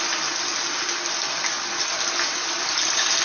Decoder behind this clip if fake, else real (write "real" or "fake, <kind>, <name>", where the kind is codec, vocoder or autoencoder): real